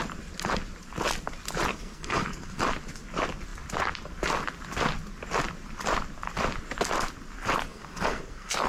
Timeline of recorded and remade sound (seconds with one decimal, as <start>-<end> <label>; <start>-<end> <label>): 0.0-1.7 recorded; 1.7-2.6 remade; 2.6-7.7 recorded; 7.7-8.7 remade